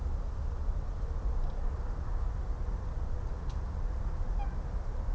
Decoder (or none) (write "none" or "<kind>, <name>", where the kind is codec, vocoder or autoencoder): none